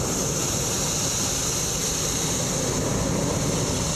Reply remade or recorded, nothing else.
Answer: recorded